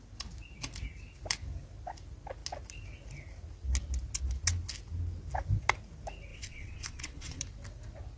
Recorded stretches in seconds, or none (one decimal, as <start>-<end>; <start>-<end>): 0.0-6.3; 7.4-8.2